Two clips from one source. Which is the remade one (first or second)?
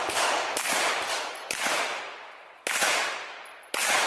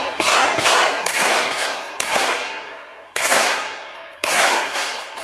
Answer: second